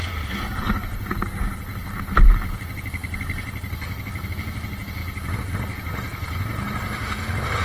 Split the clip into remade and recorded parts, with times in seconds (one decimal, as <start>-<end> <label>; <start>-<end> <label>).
0.0-7.6 recorded